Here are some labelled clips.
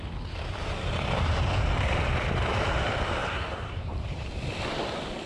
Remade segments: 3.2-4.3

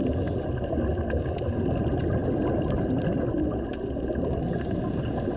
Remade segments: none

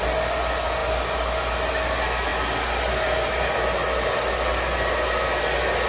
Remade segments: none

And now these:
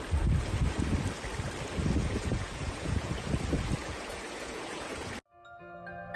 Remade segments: 2.0-3.4; 3.8-5.1